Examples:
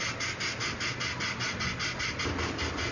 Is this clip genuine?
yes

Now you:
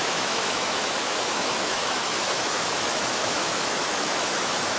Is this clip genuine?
no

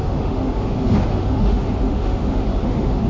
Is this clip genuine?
no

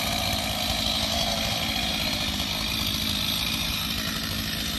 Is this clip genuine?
yes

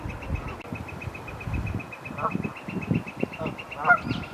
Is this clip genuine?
yes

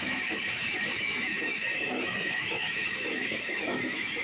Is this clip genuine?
no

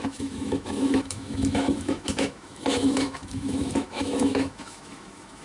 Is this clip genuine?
no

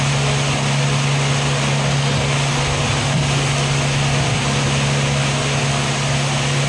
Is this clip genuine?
yes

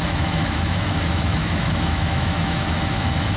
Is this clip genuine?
no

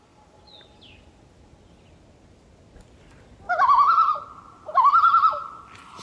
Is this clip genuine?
yes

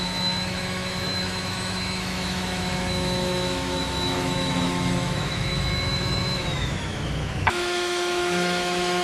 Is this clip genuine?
no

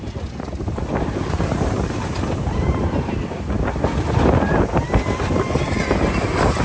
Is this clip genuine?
yes